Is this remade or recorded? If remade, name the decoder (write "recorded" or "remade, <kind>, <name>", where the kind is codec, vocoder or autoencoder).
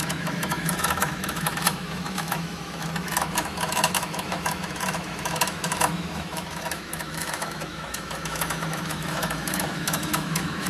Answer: remade, autoencoder, DAC-VAE